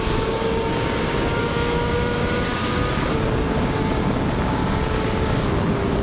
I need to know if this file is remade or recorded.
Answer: remade